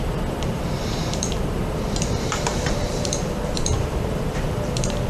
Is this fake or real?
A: fake